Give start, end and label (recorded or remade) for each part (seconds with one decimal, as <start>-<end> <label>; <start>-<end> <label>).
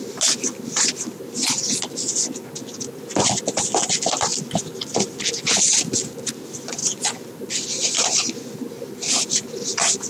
0.0-6.8 recorded; 6.8-7.5 remade; 7.5-10.1 recorded